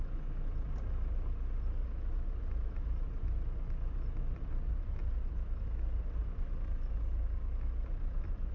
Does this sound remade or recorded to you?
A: recorded